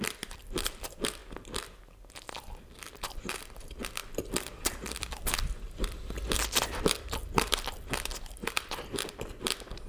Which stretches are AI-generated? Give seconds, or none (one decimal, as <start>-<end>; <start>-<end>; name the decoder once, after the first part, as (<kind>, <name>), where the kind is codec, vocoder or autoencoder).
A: 0.0-1.2 (vocoder, BigVGAN v2); 2.3-9.9